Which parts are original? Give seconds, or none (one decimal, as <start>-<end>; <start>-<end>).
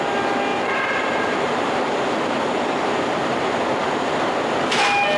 0.0-0.5; 3.6-5.2